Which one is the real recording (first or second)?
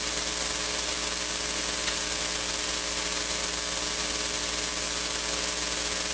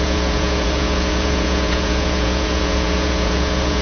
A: first